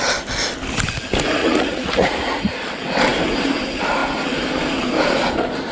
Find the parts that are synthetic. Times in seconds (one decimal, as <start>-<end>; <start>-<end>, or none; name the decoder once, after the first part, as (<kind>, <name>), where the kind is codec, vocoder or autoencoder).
1.4-2.5 (vocoder, Vocos)

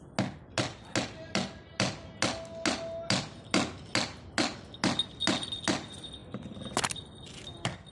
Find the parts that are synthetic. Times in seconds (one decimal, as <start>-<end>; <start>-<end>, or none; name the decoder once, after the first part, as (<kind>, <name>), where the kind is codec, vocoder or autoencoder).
none

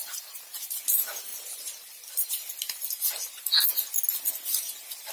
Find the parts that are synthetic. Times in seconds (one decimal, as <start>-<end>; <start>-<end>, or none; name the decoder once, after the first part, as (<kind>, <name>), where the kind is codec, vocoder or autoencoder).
0.0-0.7 (vocoder, BigVGAN v2)

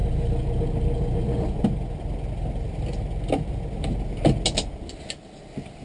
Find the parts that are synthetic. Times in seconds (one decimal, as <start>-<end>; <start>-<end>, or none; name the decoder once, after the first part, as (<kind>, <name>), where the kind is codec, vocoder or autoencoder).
none

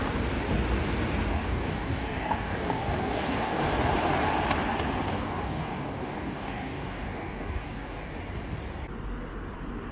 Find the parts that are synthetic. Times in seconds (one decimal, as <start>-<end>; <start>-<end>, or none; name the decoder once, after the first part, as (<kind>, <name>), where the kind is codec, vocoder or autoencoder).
1.3-3.6 (codec, DAC); 5.1-8.1

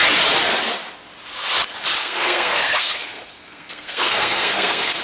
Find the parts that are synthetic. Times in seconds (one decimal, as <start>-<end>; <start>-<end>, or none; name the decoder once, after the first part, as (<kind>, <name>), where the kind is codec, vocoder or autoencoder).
2.0-5.0 (codec, SNAC)

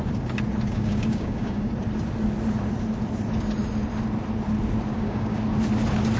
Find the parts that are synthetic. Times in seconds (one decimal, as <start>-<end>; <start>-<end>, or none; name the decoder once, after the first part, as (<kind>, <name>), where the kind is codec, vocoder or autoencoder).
0.7-1.7 (codec, DAC); 4.9-5.4

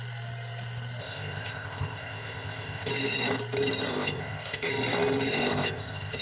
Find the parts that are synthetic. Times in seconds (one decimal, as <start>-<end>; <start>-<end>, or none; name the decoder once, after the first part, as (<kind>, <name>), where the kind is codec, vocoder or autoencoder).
1.0-2.9 (codec, ZipCodec); 3.9-4.7; 5.3-6.2